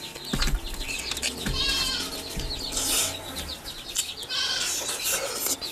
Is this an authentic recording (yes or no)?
yes